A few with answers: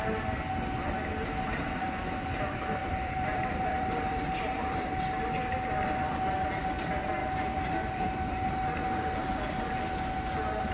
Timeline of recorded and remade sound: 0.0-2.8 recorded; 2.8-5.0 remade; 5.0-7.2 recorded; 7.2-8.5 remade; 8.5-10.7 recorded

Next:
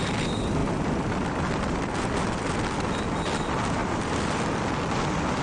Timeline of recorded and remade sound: 0.0-0.6 recorded; 0.6-2.5 remade; 2.5-3.8 recorded; 3.8-5.4 remade

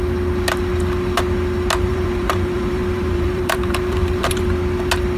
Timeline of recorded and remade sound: 0.0-1.9 recorded; 1.9-4.4 remade; 4.4-5.2 recorded

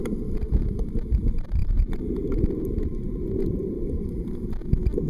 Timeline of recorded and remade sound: 0.0-1.6 recorded; 1.6-4.5 remade; 4.5-5.1 recorded

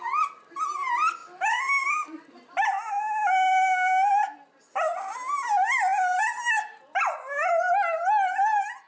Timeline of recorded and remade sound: 0.0-8.9 recorded